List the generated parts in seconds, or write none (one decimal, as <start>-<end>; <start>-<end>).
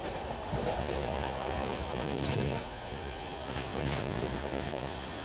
0.8-5.2